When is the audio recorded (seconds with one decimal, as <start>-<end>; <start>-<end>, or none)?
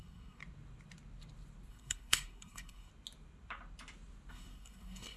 0.4-1.7; 2.9-4.3